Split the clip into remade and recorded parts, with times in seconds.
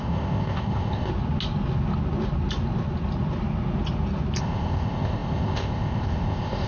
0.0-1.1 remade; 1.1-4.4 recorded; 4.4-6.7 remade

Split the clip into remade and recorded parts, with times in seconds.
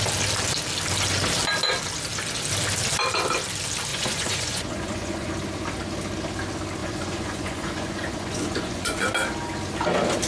0.0-3.9 recorded; 3.9-5.3 remade; 5.3-6.8 recorded; 6.8-9.1 remade; 9.1-10.3 recorded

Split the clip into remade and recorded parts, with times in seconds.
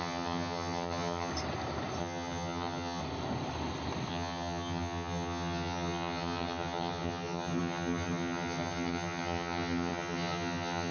0.0-1.3 remade; 1.3-2.0 recorded; 2.0-3.0 remade; 3.0-4.1 recorded; 4.1-10.9 remade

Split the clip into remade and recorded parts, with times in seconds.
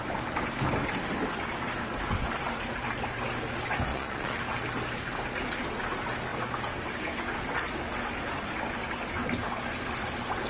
0.0-3.9 recorded; 3.9-4.4 remade; 4.4-10.5 recorded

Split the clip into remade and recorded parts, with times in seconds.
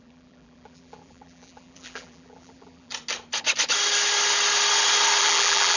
0.0-2.9 remade; 2.9-5.2 recorded; 5.2-5.8 remade